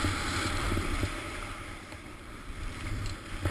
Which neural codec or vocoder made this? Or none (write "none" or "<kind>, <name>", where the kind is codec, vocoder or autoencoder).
vocoder, BigVGAN v2